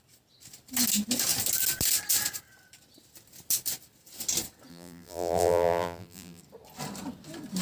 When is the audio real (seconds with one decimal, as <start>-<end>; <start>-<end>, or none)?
0.0-4.7; 6.4-7.6